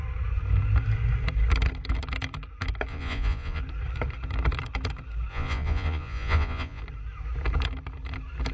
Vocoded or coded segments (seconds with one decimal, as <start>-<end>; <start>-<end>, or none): 2.9-3.6; 5.3-6.8